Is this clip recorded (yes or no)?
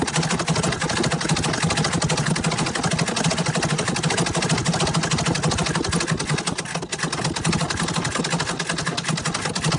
yes